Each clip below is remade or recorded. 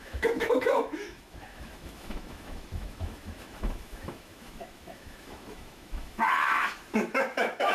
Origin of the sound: remade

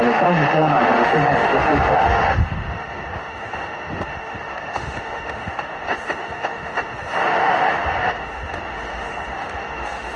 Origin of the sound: remade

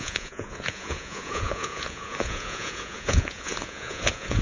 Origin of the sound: remade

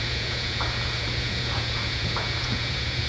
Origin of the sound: remade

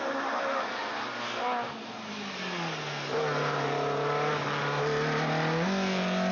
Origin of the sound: recorded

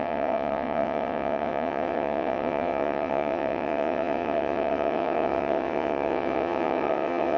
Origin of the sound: remade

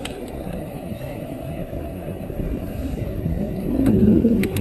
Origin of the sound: remade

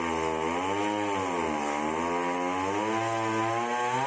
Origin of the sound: recorded